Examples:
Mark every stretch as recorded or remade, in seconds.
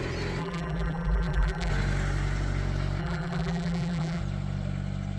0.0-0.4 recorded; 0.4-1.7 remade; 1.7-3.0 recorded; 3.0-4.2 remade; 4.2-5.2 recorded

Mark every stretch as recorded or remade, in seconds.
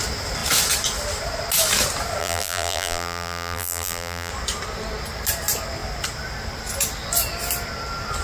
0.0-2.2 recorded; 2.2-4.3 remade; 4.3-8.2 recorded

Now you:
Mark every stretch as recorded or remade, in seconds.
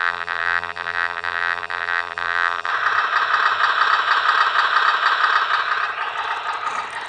0.0-2.7 remade; 2.7-7.1 recorded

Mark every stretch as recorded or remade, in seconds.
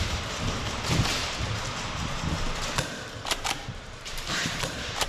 0.0-0.6 remade; 0.6-3.7 recorded; 3.7-5.1 remade